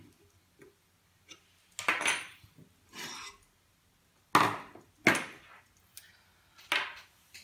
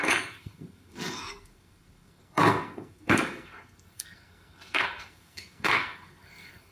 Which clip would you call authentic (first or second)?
first